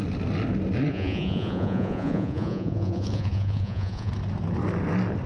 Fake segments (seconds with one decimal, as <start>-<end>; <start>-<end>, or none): 0.9-4.1